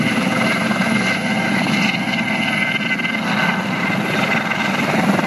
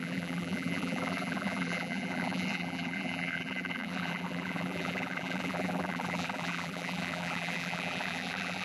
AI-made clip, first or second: second